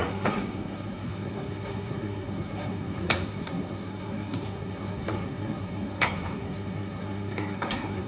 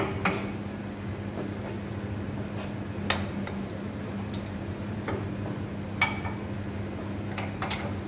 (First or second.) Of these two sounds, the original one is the second